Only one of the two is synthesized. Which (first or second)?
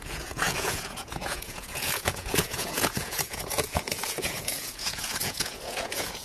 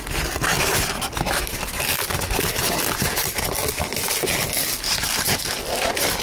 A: first